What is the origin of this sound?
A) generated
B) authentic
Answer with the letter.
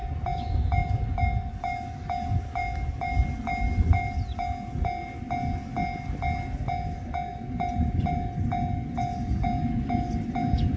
B